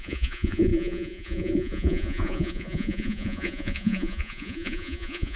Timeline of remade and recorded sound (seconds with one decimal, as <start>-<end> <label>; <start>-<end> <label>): 0.0-5.4 remade